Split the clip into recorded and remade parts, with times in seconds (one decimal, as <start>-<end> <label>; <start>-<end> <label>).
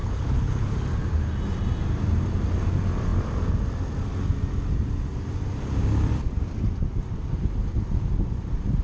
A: 0.0-0.7 remade; 0.7-8.8 recorded